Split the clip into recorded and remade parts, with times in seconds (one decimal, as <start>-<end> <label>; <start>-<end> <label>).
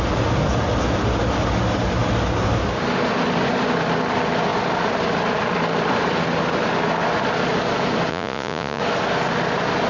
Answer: 0.0-8.1 recorded; 8.1-8.8 remade; 8.8-9.9 recorded